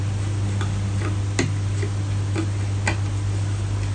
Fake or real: real